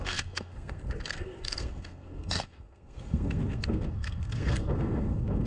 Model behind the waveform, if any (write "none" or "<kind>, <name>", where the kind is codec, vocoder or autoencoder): codec, SNAC